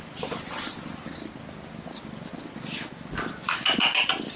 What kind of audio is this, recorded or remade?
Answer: recorded